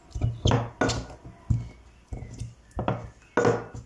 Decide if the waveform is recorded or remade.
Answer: recorded